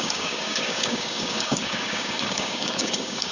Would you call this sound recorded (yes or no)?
no